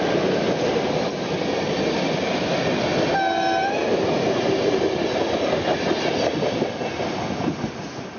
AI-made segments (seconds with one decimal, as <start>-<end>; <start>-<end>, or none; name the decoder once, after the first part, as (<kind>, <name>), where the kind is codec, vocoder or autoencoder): none